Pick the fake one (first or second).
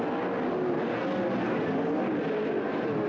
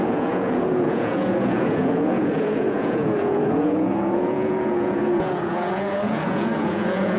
second